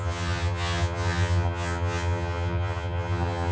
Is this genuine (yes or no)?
no